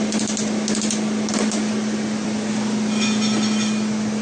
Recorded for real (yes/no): yes